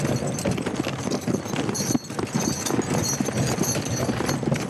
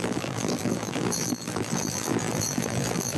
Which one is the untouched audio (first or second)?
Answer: first